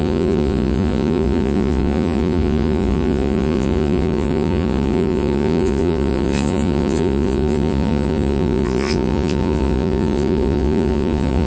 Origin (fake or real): fake